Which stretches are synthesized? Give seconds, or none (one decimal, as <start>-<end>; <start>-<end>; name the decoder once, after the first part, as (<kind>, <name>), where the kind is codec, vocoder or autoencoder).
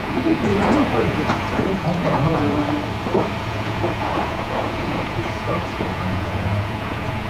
0.0-2.6 (vocoder, Vocos); 3.4-7.3